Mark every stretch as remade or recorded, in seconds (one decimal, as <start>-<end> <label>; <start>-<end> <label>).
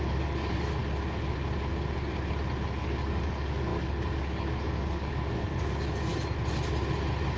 0.0-0.8 remade; 0.8-2.8 recorded; 2.8-6.1 remade; 6.1-7.4 recorded